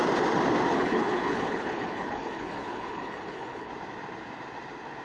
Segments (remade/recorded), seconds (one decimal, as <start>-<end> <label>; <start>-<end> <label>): 0.0-0.7 recorded; 0.7-3.7 remade; 3.7-5.0 recorded